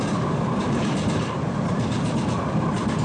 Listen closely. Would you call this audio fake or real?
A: fake